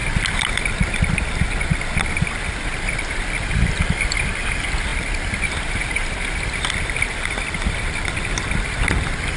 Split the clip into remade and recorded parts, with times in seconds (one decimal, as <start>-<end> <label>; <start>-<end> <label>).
0.0-9.4 recorded